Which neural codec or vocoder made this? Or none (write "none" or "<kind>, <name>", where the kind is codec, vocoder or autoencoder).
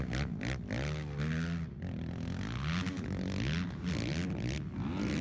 none